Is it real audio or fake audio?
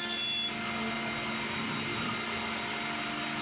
real